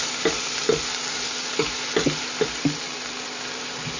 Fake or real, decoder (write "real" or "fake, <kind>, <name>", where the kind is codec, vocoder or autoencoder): real